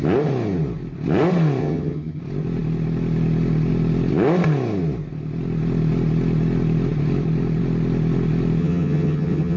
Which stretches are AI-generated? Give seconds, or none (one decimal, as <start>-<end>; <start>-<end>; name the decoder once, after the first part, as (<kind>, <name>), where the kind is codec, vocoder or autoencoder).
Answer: 1.6-2.2 (vocoder, HiFi-GAN); 8.6-9.6

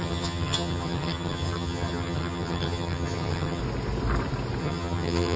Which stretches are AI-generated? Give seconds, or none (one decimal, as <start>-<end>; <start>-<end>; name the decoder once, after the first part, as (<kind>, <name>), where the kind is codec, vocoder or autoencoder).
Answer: 0.0-3.6 (vocoder, HiFi-GAN); 4.6-5.4

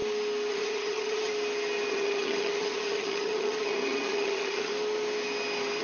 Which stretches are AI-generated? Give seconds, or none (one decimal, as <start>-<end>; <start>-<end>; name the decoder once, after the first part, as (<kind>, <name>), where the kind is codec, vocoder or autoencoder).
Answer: 0.5-1.3 (vocoder, HiFi-GAN); 1.9-4.7

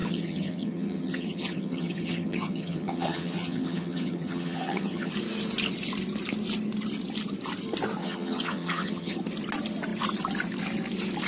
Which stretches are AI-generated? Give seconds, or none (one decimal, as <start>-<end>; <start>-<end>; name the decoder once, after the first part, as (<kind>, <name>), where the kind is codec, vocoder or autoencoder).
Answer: 0.0-5.1 (vocoder, HiFi-GAN); 8.0-9.2

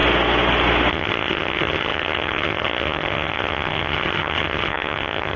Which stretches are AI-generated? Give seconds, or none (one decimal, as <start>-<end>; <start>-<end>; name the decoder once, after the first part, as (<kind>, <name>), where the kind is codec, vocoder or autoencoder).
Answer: 0.9-5.4 (vocoder, HiFi-GAN)